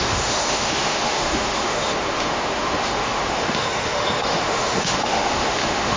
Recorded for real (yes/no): no